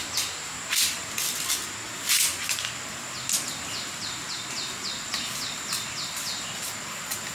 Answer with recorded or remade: recorded